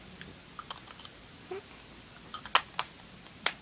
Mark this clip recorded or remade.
recorded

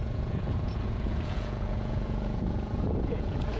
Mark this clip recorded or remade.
remade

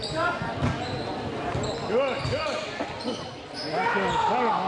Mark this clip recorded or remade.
recorded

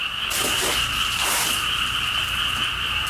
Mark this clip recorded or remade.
recorded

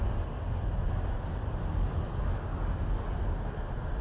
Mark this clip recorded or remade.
recorded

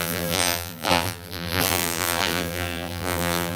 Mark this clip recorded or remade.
remade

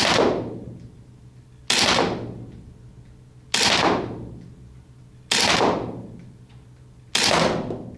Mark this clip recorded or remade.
recorded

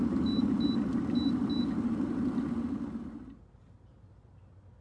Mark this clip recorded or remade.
recorded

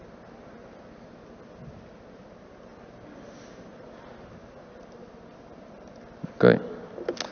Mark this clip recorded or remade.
recorded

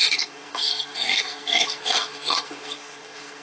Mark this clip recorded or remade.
remade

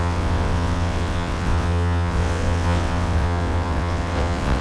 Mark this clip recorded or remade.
remade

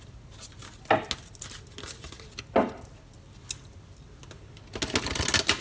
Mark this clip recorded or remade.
recorded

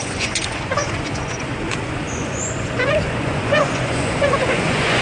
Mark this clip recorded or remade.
remade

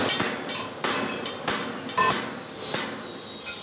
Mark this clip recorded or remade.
recorded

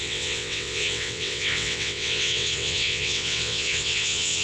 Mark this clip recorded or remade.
remade